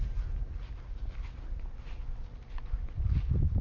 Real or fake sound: real